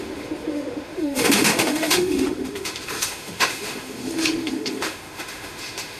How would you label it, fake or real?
fake